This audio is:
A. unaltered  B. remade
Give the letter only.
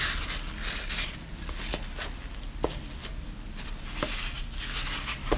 A